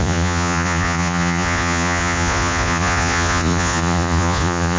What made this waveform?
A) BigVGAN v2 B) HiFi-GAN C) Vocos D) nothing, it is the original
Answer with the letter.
C